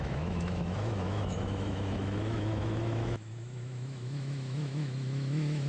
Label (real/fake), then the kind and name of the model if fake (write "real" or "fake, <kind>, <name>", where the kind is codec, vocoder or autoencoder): fake, autoencoder, DAC-VAE